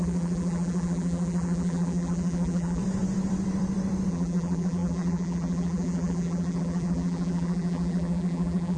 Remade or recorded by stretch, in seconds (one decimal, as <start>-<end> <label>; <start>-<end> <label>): 0.0-2.8 remade; 2.8-4.1 recorded; 4.1-8.8 remade